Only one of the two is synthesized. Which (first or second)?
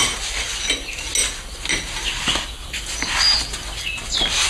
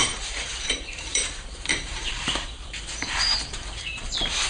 second